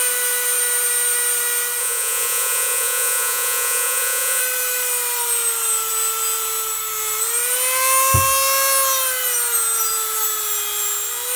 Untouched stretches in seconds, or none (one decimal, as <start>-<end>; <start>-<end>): 0.0-1.8; 4.4-11.4